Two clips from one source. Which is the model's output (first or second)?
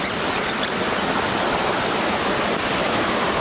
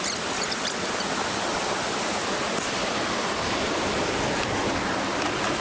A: first